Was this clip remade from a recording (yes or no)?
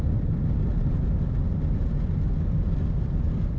no